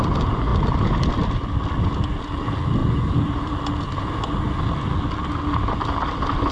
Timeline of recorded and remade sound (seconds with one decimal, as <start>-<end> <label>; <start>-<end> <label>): 0.0-6.5 recorded